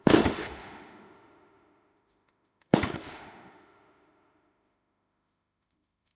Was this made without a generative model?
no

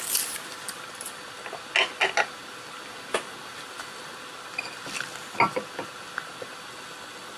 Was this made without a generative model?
yes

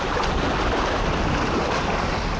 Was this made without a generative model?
yes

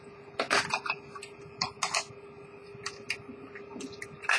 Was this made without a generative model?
yes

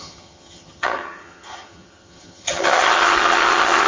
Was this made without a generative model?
no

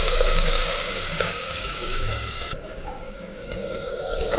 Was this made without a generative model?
no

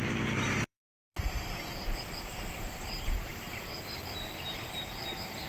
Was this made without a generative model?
no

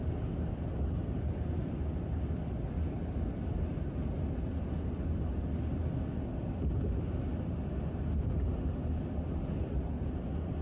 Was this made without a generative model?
yes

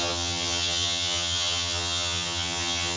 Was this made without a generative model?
no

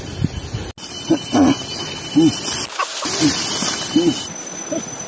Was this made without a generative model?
yes